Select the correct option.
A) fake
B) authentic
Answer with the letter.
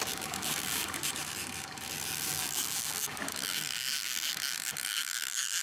A